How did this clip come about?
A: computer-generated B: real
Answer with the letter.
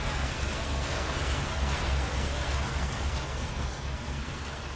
A